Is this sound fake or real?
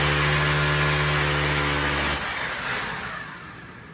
real